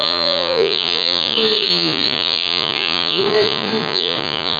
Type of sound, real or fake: fake